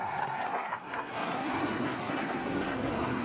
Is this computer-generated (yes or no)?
yes